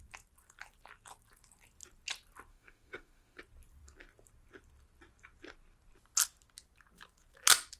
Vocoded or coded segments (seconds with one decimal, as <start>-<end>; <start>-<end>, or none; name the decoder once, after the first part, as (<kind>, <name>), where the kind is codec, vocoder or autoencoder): 2.5-3.4 (autoencoder, DAC-VAE)